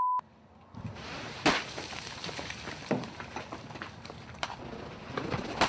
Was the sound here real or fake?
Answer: real